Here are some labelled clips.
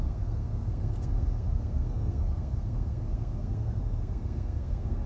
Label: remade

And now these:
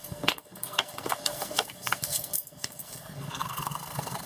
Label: remade